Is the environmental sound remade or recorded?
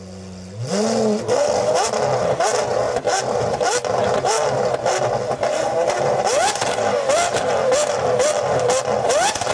recorded